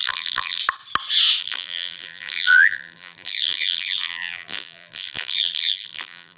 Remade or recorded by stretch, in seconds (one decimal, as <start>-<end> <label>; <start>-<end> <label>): 0.0-0.6 remade; 0.6-1.4 recorded; 1.4-6.4 remade